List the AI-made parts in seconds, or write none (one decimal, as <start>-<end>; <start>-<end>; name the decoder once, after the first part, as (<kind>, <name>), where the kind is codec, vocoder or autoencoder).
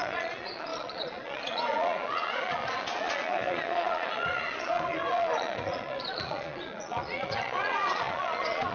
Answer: 0.0-8.7 (vocoder, Vocos)